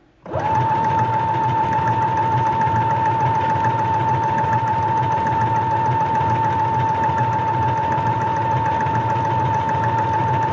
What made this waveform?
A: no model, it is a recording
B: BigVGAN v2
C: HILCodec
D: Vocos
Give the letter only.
A